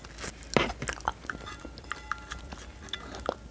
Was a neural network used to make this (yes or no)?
no